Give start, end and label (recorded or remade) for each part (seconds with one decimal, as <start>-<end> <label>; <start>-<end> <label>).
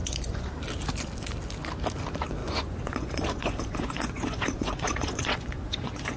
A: 0.0-0.5 remade; 0.5-2.4 recorded; 2.4-6.2 remade